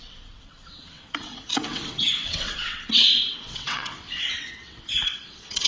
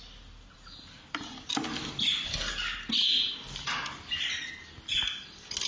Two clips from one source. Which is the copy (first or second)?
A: first